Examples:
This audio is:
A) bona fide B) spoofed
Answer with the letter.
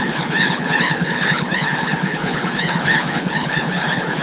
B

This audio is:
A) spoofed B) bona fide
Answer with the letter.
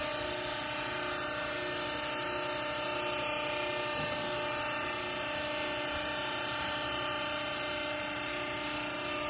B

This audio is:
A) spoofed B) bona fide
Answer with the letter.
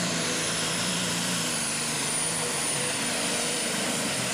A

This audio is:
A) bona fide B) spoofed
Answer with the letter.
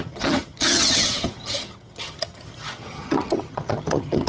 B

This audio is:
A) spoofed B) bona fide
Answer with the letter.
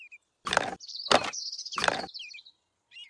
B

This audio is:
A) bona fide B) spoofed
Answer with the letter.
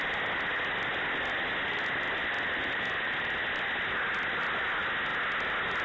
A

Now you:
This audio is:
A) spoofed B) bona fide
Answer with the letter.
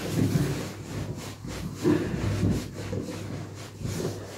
B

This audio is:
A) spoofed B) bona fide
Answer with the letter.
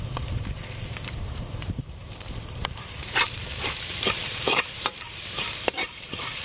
A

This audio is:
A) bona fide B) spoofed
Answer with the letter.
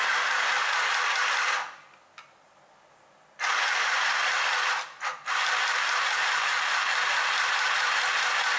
A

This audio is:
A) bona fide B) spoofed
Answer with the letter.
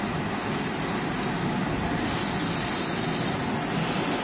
A